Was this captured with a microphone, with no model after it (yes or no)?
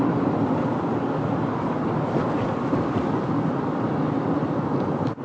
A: no